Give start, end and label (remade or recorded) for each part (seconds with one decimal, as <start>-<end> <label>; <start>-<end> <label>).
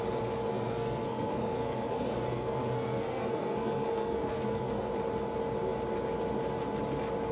0.0-0.5 recorded; 0.5-4.9 remade; 4.9-7.3 recorded